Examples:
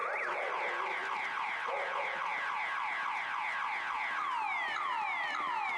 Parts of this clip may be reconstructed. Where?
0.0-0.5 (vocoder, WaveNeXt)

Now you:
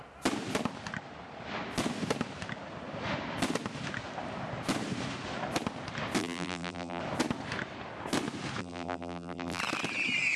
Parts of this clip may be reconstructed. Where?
6.2-7.0 (vocoder, BigVGAN v2); 8.6-9.6

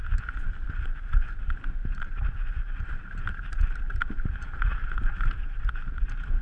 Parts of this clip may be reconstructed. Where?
1.8-5.6 (vocoder, BigVGAN v2)

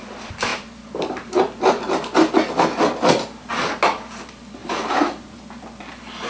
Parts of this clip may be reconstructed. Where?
4.6-5.4 (vocoder, BigVGAN v2)

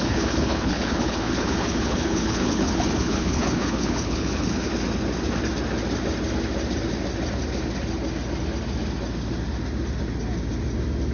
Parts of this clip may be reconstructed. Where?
0.0-4.7 (codec, HILCodec)

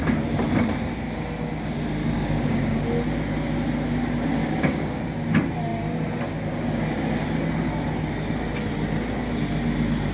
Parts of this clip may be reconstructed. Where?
2.0-2.8 (codec, DAC); 4.4-5.0

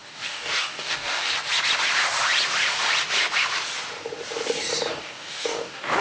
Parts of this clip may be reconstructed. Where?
0.0-1.3 (codec, DAC); 4.9-6.0

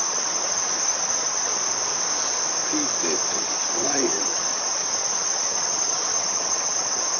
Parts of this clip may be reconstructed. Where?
0.0-1.5 (vocoder, HiFi-GAN); 3.3-7.2